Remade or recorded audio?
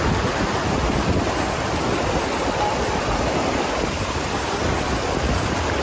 recorded